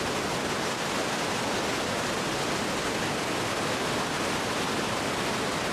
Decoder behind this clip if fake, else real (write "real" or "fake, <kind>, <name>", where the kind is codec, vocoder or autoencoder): real